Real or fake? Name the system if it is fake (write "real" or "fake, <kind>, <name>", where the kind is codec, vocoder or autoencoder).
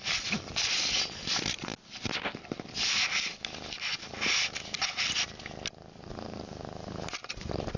real